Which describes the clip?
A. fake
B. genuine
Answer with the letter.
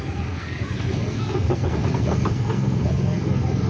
A